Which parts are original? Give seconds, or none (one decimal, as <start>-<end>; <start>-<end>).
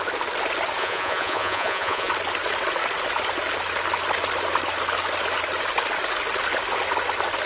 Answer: 0.0-0.8; 2.1-7.5